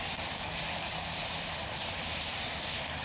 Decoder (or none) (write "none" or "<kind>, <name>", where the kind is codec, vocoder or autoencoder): none